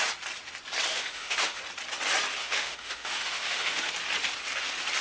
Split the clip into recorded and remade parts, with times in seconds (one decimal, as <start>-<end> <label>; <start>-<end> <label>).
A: 0.0-0.9 recorded; 0.9-1.6 remade; 1.6-2.4 recorded; 2.4-3.9 remade; 3.9-5.0 recorded